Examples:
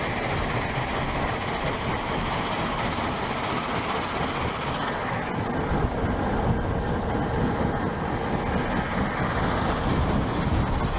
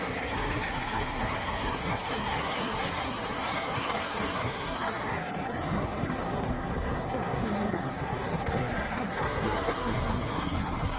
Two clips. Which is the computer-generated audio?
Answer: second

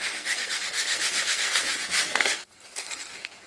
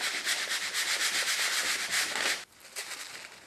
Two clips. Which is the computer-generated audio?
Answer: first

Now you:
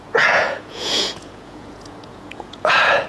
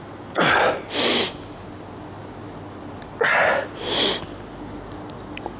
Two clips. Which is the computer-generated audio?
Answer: first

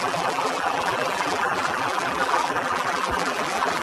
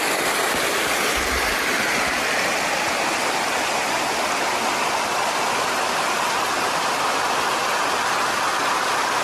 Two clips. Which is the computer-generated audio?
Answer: first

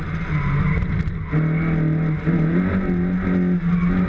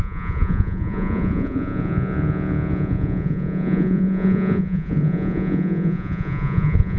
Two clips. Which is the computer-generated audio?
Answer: second